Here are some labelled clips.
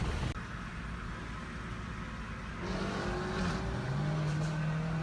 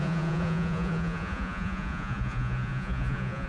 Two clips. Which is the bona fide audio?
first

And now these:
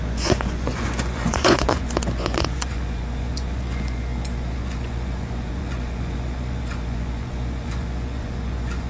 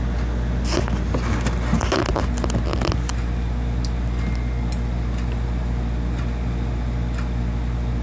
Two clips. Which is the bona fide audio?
second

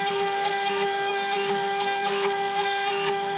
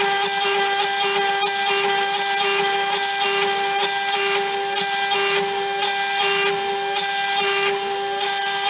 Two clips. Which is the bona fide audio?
second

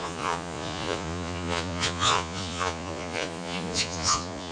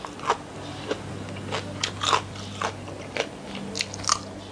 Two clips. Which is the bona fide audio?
second